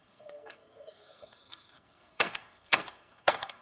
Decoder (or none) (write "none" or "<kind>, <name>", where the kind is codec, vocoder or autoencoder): codec, SNAC